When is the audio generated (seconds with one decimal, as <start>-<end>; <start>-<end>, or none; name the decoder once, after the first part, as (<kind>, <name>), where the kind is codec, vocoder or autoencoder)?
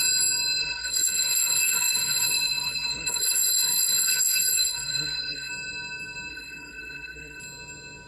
0.6-5.5 (codec, SNAC); 6.3-7.4